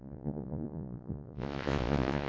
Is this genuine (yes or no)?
no